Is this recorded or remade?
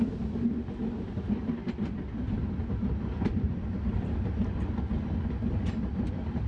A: recorded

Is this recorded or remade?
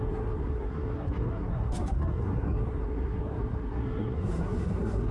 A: remade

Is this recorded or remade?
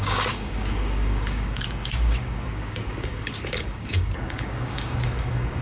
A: remade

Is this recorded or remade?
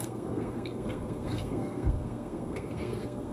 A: remade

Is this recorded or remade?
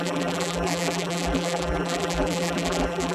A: remade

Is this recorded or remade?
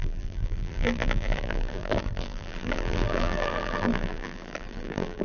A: remade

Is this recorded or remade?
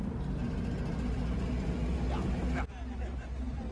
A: recorded